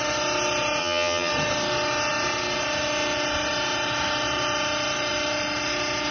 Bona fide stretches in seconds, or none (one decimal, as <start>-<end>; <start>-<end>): 0.0-0.8; 1.3-6.1